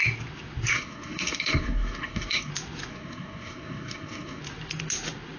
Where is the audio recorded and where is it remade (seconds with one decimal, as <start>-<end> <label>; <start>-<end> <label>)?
0.0-0.7 recorded; 0.7-2.5 remade; 2.5-2.9 recorded; 2.9-4.4 remade; 4.4-5.4 recorded